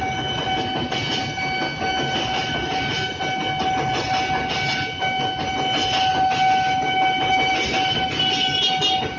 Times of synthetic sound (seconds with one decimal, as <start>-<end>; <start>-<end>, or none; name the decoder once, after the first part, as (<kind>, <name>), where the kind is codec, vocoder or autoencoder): none